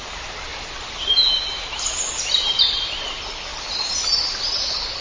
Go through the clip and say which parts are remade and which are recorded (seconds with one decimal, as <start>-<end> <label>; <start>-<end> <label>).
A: 0.0-5.0 recorded

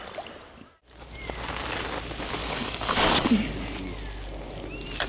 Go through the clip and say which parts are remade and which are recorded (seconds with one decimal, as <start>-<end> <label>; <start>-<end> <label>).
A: 0.0-2.4 recorded; 2.4-3.5 remade; 3.5-5.1 recorded

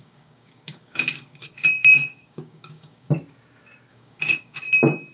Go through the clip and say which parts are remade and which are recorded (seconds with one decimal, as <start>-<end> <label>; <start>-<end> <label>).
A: 0.0-3.1 remade; 3.1-3.9 recorded; 3.9-4.6 remade; 4.6-5.1 recorded

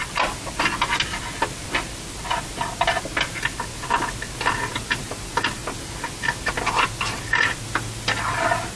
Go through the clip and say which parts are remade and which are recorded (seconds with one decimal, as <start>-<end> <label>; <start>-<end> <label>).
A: 0.0-8.8 recorded

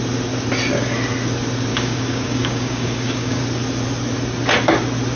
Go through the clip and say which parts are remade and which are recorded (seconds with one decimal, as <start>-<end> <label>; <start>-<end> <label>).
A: 0.0-1.7 recorded; 1.7-3.4 remade; 3.4-5.2 recorded